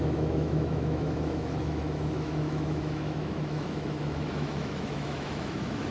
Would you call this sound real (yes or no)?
no